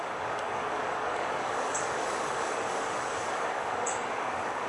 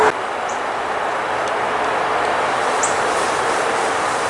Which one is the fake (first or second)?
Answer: first